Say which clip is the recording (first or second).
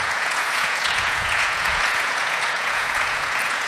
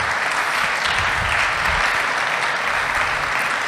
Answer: second